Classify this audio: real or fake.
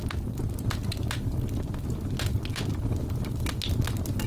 real